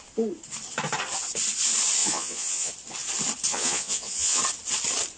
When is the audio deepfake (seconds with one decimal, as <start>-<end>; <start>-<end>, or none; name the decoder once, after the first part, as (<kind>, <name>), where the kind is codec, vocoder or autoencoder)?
2.0-2.7 (vocoder, Vocos); 3.5-4.4